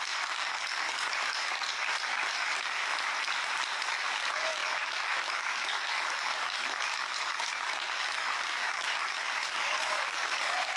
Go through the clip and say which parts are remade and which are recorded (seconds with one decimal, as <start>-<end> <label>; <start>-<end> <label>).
0.0-2.8 remade; 2.8-3.9 recorded; 3.9-10.8 remade

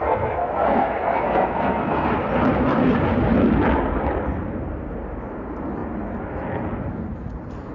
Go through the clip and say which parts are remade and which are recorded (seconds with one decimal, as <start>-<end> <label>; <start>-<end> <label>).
0.0-2.1 remade; 2.1-7.7 recorded

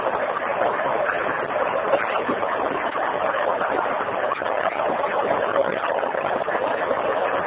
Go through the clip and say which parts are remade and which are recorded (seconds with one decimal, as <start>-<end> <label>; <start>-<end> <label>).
0.0-4.3 recorded; 4.3-4.8 remade; 4.8-5.5 recorded; 5.5-6.3 remade; 6.3-7.5 recorded

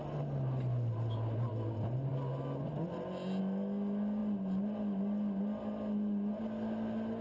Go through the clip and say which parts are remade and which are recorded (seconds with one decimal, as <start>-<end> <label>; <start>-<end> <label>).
0.0-7.2 recorded

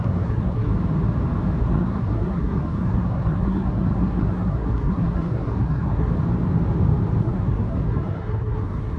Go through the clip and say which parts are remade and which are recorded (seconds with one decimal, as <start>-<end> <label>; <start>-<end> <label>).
0.0-0.7 remade; 0.7-1.6 recorded; 1.6-6.1 remade; 6.1-7.2 recorded; 7.2-9.0 remade

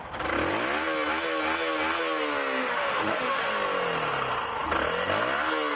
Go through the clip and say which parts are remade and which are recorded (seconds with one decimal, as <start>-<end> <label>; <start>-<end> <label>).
0.0-2.6 recorded; 2.6-3.5 remade; 3.5-5.8 recorded

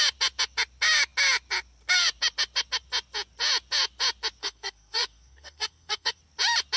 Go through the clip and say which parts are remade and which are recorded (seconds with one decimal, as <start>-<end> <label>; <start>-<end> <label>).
0.0-4.4 recorded; 4.4-6.2 remade; 6.2-6.8 recorded

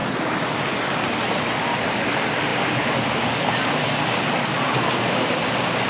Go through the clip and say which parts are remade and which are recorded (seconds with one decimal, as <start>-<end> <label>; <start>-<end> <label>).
0.0-5.9 recorded